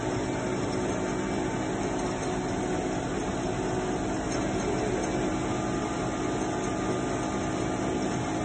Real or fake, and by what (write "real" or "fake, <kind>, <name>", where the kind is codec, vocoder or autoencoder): real